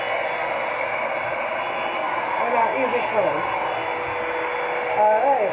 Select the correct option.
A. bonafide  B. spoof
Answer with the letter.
A